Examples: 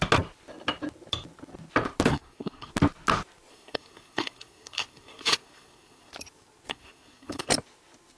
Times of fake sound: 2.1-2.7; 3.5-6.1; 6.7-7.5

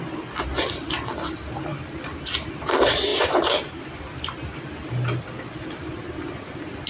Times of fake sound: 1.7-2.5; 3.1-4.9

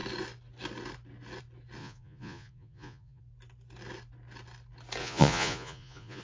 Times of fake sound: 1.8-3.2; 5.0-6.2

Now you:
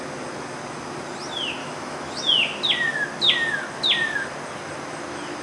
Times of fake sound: 1.6-2.2

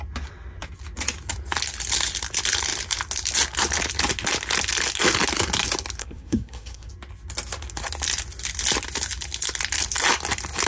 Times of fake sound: 6.0-6.9

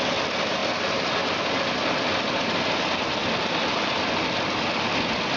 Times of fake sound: 3.2-3.9

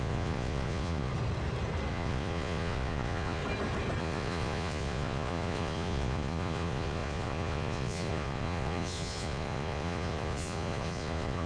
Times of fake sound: 0.0-1.1; 1.9-3.4; 4.0-11.5

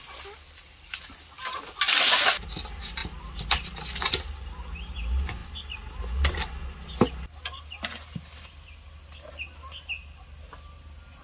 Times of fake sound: none